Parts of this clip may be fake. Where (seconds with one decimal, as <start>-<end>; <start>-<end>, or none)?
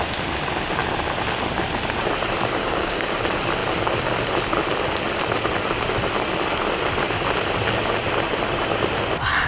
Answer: 2.6-3.2